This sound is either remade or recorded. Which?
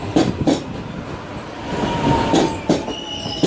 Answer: recorded